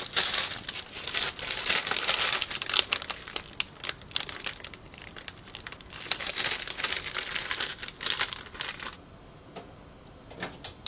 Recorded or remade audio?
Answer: recorded